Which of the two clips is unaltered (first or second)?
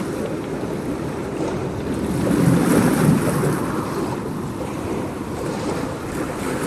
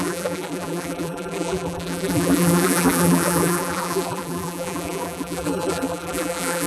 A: first